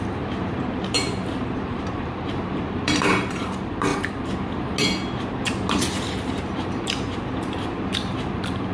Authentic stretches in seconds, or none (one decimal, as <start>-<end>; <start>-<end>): 3.9-6.3